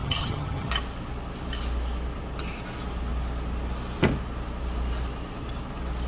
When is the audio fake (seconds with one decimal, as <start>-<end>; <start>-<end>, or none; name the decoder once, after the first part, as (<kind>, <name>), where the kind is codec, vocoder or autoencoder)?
0.0-0.7 (vocoder, HiFi-GAN)